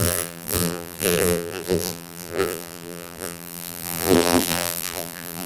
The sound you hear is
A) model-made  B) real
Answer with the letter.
A